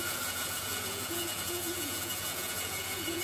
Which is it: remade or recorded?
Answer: remade